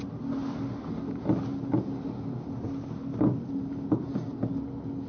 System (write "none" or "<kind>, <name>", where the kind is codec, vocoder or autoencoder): none